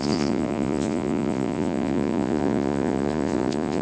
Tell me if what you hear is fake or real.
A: fake